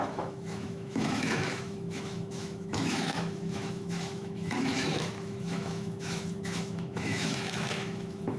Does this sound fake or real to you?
fake